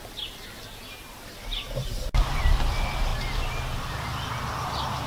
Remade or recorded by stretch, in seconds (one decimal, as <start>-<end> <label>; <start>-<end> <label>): 0.0-1.8 recorded; 1.8-2.6 remade; 2.6-5.1 recorded